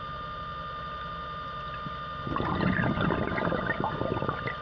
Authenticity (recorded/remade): recorded